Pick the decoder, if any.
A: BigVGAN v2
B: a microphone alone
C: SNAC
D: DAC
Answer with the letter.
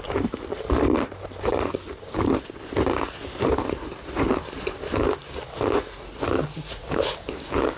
B